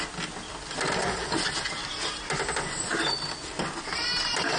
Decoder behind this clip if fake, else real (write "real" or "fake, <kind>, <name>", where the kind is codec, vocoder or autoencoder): real